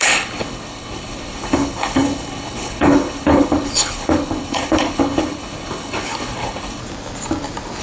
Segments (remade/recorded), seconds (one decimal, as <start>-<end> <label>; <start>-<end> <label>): 0.0-6.8 remade; 6.8-7.8 recorded